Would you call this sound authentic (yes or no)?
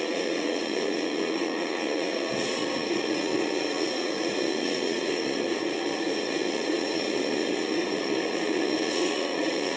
no